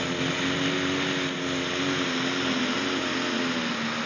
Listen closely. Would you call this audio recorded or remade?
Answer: recorded